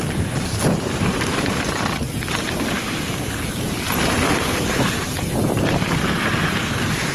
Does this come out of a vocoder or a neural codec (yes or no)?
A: yes